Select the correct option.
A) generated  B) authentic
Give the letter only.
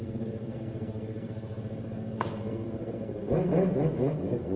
A